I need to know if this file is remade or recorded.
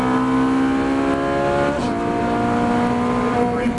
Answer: recorded